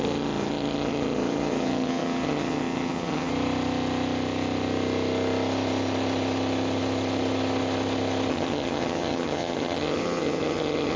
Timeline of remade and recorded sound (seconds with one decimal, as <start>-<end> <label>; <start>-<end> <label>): 0.0-3.3 remade; 3.3-8.3 recorded; 8.3-11.0 remade